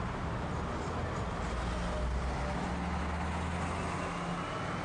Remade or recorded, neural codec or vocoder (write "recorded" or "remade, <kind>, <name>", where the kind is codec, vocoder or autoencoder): recorded